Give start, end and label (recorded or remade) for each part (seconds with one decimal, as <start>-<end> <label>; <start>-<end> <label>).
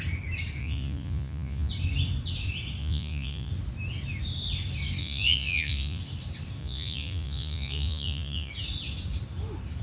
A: 0.0-0.6 recorded; 0.6-1.7 remade; 1.7-2.8 recorded; 2.8-3.5 remade; 3.5-5.0 recorded; 5.0-6.0 remade; 6.0-6.6 recorded; 6.6-8.5 remade; 8.5-9.8 recorded